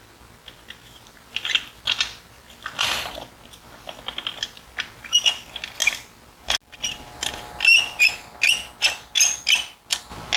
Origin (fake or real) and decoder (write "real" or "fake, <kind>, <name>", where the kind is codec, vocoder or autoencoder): real